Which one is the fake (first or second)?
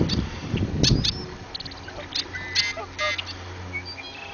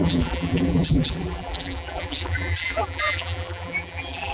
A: second